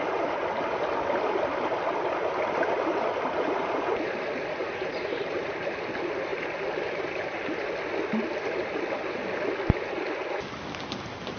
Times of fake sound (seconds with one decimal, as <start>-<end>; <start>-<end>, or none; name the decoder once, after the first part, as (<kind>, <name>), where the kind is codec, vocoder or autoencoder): 4.6-5.4 (vocoder, BigVGAN v2); 6.3-7.4